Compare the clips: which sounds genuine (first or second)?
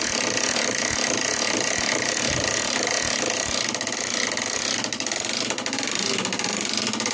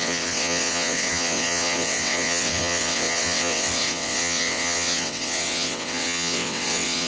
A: first